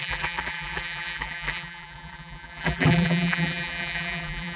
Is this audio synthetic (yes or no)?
yes